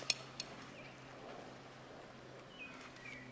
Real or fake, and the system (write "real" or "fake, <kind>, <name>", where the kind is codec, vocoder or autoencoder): real